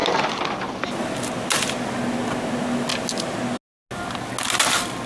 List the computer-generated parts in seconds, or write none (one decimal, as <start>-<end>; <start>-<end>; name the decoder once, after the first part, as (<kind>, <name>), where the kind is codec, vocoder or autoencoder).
none